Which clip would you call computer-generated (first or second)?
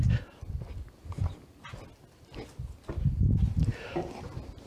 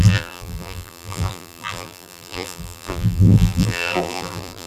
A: second